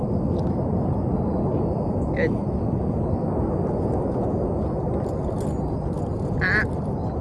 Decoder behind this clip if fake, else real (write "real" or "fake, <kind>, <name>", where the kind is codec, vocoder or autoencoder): real